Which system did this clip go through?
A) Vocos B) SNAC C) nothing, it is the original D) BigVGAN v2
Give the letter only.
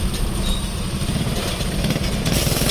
C